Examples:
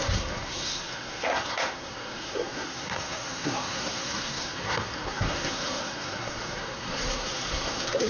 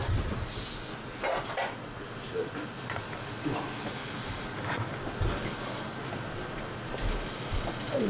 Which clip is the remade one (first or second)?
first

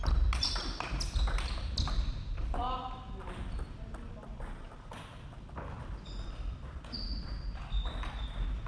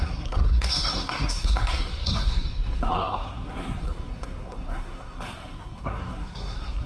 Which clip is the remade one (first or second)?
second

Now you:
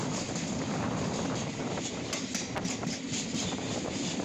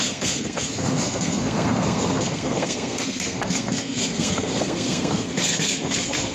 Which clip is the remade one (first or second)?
second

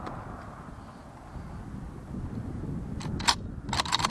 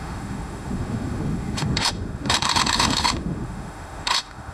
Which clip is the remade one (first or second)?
second